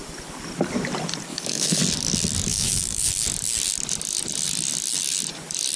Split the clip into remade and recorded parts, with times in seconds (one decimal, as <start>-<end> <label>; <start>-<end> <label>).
0.0-1.3 recorded; 1.3-1.8 remade; 1.8-2.5 recorded; 2.5-3.1 remade; 3.1-5.8 recorded